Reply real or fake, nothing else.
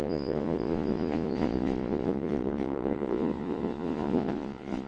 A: fake